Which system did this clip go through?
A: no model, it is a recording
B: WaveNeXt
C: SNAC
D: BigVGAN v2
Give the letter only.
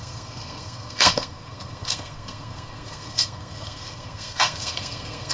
C